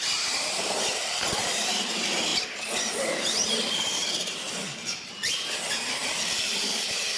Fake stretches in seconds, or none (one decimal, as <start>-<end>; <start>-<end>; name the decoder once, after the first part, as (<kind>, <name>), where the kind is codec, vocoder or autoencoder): 0.0-2.3 (vocoder, BigVGAN v2); 2.8-6.0; 6.6-7.2

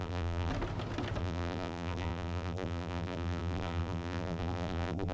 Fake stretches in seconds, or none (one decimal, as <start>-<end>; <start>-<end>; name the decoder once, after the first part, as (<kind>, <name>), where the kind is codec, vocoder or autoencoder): 0.0-0.5 (vocoder, BigVGAN v2); 1.2-5.1

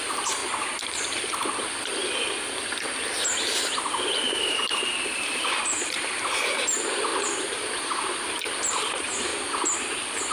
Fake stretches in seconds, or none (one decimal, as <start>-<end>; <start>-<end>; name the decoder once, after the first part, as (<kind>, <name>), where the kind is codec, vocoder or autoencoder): 0.0-0.4 (vocoder, BigVGAN v2); 3.2-7.1; 8.7-9.3

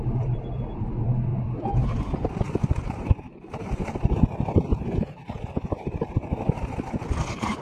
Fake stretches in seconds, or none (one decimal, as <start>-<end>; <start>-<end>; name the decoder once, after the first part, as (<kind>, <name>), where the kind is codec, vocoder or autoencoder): 1.3-4.2 (vocoder, BigVGAN v2)

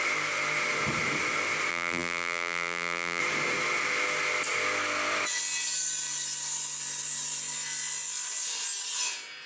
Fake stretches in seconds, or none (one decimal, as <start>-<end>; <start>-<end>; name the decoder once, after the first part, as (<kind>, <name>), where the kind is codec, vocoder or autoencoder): 1.7-3.2 (vocoder, BigVGAN v2)

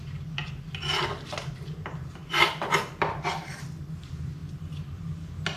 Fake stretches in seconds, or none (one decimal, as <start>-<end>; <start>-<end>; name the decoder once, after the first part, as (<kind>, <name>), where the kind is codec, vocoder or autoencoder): none